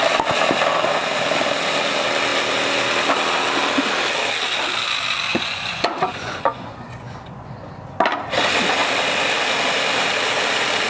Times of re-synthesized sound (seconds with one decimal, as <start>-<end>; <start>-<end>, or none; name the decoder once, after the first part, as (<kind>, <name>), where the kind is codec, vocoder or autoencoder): 5.3-7.7 (vocoder, Vocos)